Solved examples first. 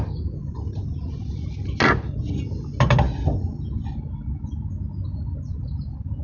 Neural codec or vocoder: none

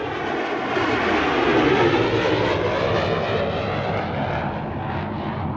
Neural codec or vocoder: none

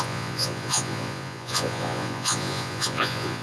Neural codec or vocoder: vocoder, Vocos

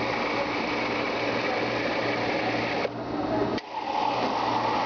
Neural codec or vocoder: none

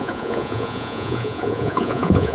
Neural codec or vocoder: vocoder, Vocos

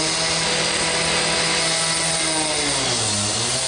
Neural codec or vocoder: none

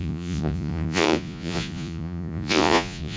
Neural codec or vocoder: vocoder, Vocos